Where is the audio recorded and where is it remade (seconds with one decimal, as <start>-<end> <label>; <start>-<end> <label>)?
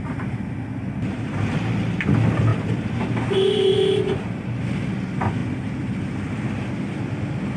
0.0-7.6 recorded